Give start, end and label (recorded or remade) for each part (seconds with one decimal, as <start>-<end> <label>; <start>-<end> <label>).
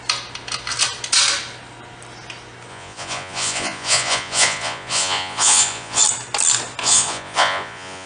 0.0-2.7 recorded; 2.7-6.0 remade; 6.0-6.8 recorded; 6.8-8.1 remade